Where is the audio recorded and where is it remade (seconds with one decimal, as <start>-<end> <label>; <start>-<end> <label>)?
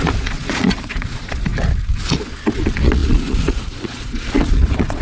0.0-1.5 remade; 1.5-2.1 recorded; 2.1-5.0 remade